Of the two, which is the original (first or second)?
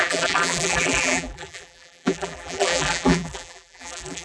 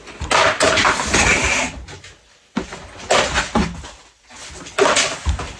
second